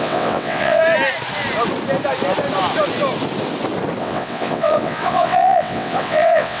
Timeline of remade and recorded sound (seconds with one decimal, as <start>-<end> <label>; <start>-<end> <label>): 0.0-0.8 remade; 0.8-4.0 recorded; 4.0-6.6 remade

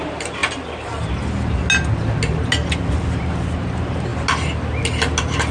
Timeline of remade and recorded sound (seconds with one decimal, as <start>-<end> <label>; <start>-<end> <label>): 0.0-5.5 recorded

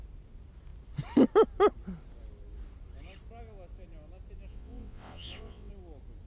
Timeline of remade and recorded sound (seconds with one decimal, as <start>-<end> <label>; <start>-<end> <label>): 0.0-4.5 recorded; 4.5-5.7 remade; 5.7-6.3 recorded

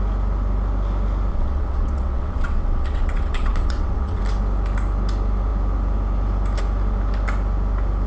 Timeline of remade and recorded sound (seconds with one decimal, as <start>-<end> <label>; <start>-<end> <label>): 0.0-1.3 recorded; 1.3-4.2 remade; 4.2-8.1 recorded

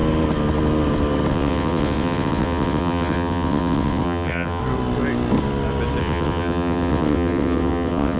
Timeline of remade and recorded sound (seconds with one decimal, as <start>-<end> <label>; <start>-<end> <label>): 0.0-1.3 recorded; 1.3-4.6 remade; 4.6-6.0 recorded; 6.0-8.2 remade

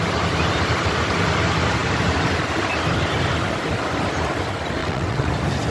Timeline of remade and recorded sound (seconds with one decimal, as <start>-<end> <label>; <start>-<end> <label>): 0.0-4.8 recorded; 4.8-5.3 remade; 5.3-5.7 recorded

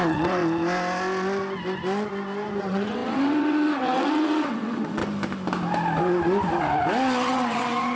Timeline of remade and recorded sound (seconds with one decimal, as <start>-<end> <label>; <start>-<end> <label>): 0.0-0.4 remade; 0.4-2.6 recorded; 2.6-5.0 remade; 5.0-7.3 recorded; 7.3-8.0 remade

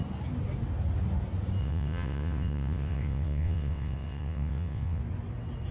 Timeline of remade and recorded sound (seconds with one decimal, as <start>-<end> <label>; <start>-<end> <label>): 0.0-1.6 recorded; 1.6-5.0 remade; 5.0-5.7 recorded